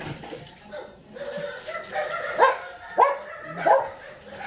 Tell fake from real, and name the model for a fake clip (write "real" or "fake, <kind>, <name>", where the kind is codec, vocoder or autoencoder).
real